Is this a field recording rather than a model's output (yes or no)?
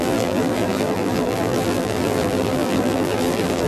no